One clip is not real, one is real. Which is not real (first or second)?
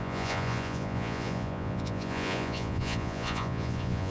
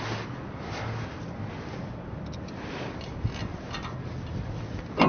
first